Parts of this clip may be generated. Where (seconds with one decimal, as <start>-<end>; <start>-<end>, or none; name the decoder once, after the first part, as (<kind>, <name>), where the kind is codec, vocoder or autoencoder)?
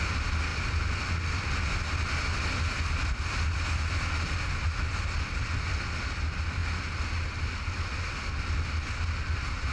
none